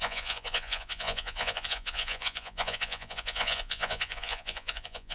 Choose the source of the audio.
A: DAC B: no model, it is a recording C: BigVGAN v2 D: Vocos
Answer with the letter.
D